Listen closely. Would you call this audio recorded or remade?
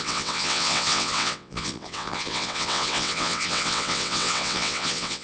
remade